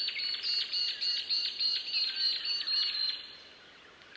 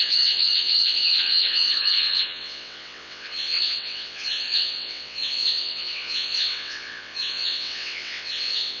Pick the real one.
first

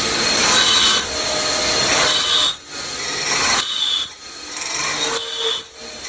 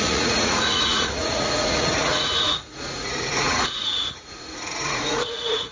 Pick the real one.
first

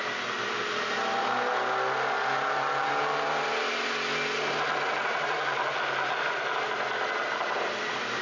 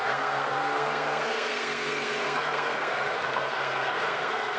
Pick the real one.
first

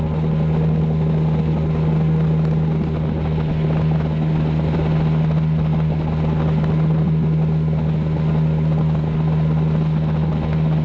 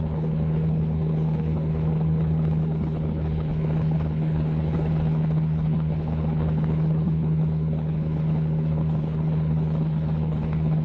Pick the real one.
first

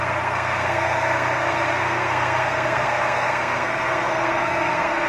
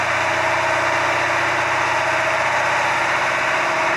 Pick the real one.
second